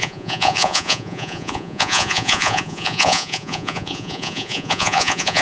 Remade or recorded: remade